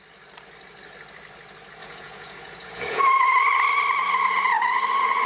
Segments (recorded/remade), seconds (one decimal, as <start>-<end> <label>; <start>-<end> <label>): 0.0-1.8 recorded; 1.8-3.0 remade; 3.0-5.3 recorded